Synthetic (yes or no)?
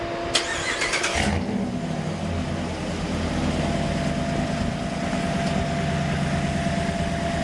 no